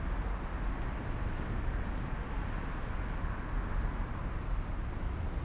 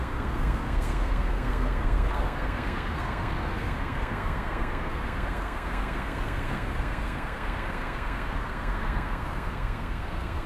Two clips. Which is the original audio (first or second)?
first